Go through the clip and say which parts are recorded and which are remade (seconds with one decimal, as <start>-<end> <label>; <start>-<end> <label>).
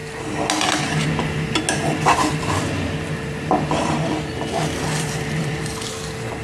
0.0-2.1 recorded; 2.1-5.9 remade; 5.9-6.4 recorded